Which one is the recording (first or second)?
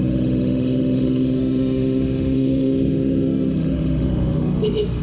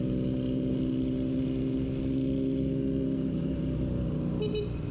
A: second